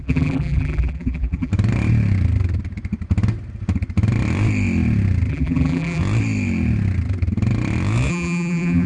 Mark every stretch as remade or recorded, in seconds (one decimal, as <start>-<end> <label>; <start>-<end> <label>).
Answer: 0.0-1.5 remade; 1.5-5.3 recorded; 5.3-6.0 remade; 6.0-8.1 recorded; 8.1-8.9 remade